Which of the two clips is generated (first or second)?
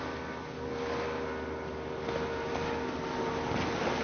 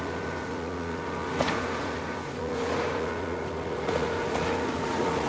second